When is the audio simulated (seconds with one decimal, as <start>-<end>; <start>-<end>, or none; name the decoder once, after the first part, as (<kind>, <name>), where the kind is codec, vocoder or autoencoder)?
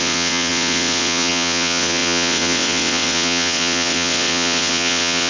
0.0-5.3 (vocoder, WaveNeXt)